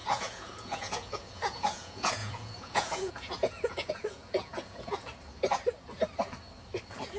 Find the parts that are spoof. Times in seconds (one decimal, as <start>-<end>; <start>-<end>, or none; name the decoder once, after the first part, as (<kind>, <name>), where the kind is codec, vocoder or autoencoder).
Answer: 0.0-5.1 (vocoder, Vocos)